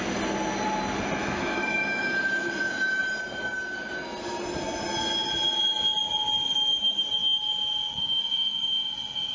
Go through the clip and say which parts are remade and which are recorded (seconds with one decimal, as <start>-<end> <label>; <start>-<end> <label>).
0.0-1.2 recorded; 1.2-3.0 remade; 3.0-9.3 recorded